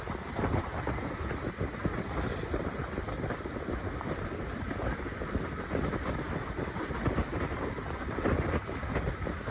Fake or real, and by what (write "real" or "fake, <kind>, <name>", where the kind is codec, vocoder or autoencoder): real